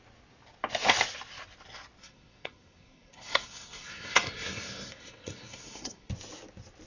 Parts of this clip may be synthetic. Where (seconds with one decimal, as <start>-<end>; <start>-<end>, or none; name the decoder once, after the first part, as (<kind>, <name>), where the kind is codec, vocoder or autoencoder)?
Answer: 2.0-6.1 (codec, SNAC)